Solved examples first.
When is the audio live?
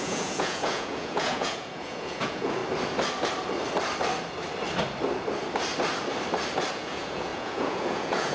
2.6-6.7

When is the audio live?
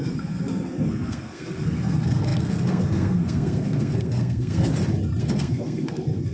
4.7-5.2